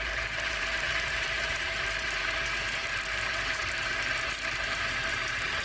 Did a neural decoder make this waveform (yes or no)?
yes